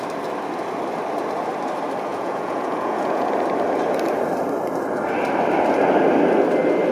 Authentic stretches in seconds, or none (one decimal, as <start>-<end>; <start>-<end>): 0.0-2.1; 3.3-6.9